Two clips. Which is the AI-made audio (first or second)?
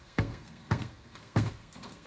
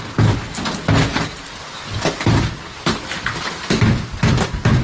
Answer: first